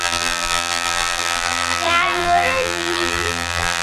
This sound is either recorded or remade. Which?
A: remade